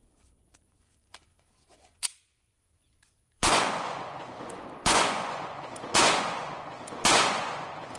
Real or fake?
fake